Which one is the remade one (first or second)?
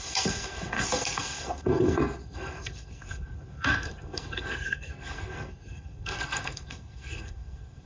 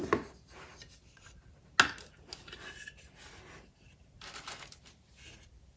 first